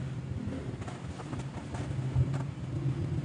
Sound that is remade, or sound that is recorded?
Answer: recorded